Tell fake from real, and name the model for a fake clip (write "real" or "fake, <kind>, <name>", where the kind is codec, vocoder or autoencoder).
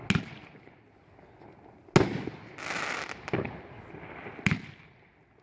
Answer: real